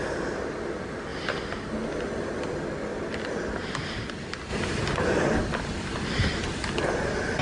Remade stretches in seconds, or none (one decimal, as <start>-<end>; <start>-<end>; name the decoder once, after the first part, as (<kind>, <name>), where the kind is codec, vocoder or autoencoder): 1.1-2.6 (vocoder, BigVGAN v2); 4.5-7.4